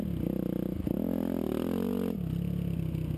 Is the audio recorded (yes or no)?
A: yes